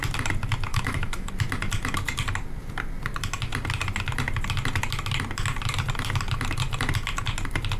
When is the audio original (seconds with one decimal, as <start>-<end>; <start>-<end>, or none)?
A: 0.0-0.7; 1.3-7.8